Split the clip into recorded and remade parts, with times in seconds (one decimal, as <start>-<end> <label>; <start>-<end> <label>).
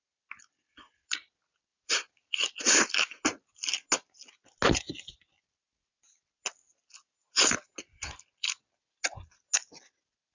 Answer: 0.0-10.3 recorded